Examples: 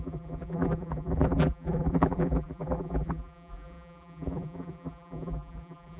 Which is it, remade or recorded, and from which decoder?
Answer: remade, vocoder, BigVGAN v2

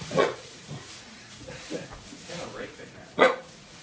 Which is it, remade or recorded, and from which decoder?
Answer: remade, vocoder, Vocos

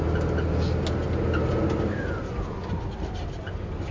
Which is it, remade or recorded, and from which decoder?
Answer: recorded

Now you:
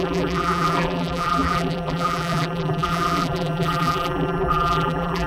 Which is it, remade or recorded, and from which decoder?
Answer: remade, vocoder, BigVGAN v2